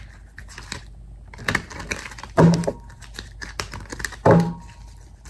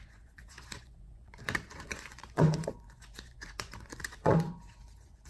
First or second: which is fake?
second